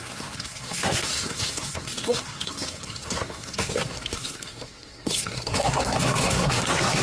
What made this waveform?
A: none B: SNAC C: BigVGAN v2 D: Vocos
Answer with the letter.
B